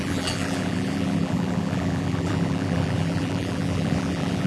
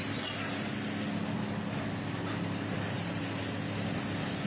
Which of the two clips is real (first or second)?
second